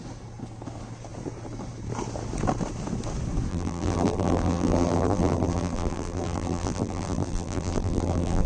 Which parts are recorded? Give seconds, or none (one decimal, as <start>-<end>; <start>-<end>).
0.0-3.5